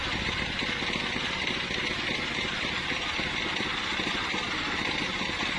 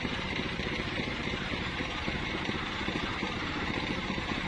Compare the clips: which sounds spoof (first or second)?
second